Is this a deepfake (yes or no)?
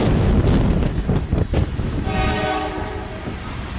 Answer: no